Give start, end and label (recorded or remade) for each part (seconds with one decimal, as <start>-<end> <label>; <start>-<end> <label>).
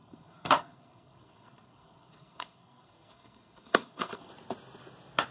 0.0-4.3 remade; 4.3-5.3 recorded